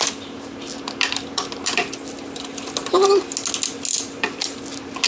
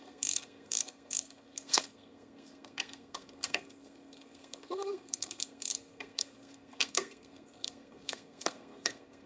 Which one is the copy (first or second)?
second